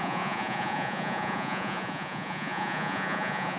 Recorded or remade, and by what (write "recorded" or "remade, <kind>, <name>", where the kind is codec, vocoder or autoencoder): remade, vocoder, Vocos